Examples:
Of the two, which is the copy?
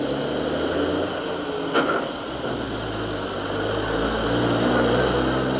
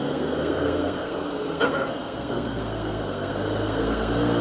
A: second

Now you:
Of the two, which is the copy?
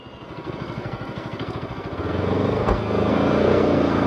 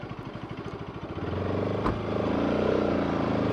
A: first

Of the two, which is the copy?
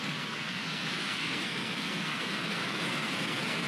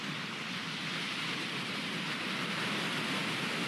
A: first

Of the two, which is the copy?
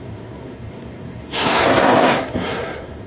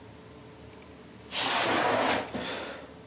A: first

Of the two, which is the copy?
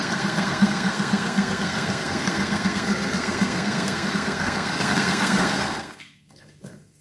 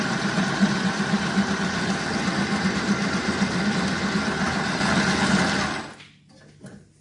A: first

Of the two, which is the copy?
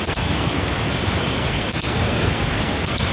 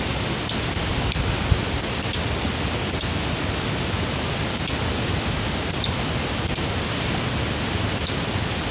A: first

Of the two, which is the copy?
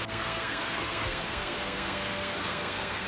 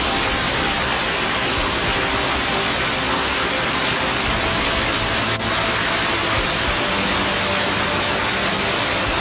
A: first